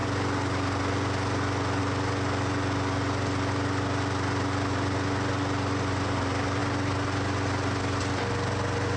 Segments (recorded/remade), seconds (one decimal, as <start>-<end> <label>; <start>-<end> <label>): 0.0-9.0 recorded